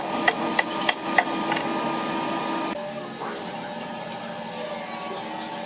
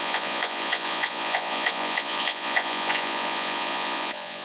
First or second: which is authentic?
first